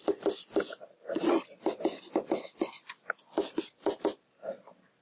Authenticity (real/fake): real